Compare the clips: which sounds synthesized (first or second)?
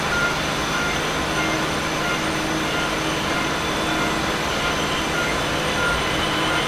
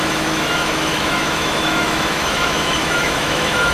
second